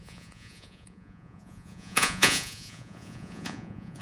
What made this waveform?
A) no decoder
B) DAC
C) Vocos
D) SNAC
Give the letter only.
C